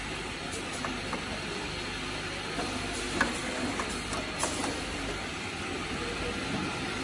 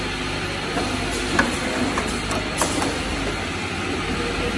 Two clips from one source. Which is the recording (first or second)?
second